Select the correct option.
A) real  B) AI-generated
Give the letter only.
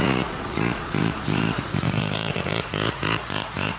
B